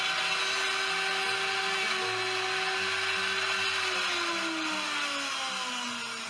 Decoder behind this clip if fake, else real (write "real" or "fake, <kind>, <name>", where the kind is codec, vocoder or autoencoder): real